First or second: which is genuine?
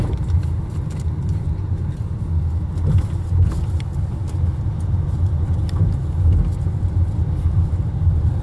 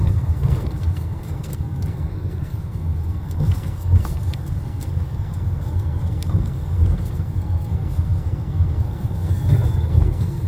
first